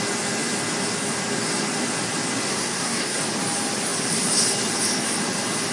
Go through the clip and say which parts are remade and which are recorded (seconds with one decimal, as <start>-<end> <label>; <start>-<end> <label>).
0.0-2.5 recorded; 2.5-3.2 remade; 3.2-5.7 recorded

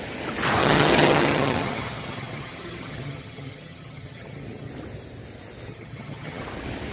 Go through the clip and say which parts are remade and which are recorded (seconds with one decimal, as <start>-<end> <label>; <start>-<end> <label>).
0.0-0.6 recorded; 0.6-4.7 remade; 4.7-5.7 recorded; 5.7-6.4 remade; 6.4-6.9 recorded

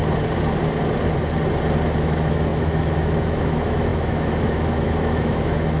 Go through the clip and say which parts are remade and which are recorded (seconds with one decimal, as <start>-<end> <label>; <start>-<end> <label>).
0.0-2.0 recorded; 2.0-5.8 remade

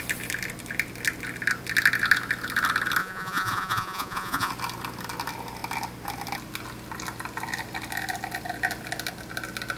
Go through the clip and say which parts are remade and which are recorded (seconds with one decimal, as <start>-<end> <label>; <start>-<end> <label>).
0.0-3.0 recorded; 3.0-4.5 remade; 4.5-9.8 recorded

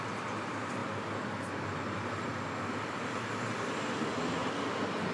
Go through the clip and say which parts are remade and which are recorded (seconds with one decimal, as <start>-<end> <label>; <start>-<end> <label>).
0.0-5.1 recorded

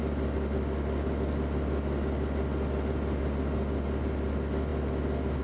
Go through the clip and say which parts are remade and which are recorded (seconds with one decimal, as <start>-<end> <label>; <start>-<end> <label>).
0.0-5.4 recorded

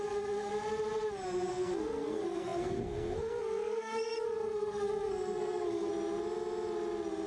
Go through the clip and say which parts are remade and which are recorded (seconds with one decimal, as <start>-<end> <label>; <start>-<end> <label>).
0.0-0.5 remade; 0.5-1.5 recorded; 1.5-5.9 remade; 5.9-7.3 recorded

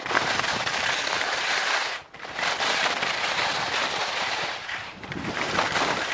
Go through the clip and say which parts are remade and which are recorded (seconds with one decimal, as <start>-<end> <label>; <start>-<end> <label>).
0.0-4.0 recorded; 4.0-6.1 remade